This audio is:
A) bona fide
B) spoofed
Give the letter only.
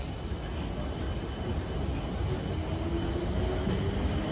A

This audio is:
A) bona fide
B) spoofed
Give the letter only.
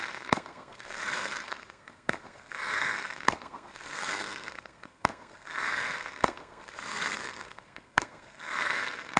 B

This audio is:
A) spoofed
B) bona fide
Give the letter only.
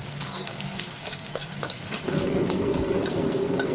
A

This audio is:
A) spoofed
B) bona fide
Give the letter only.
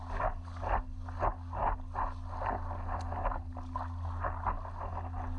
B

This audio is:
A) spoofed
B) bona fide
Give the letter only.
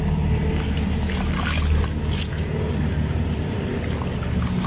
B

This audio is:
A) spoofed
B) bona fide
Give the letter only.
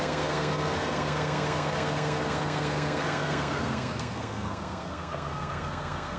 A